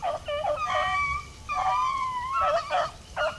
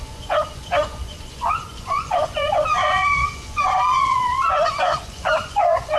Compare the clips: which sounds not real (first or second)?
second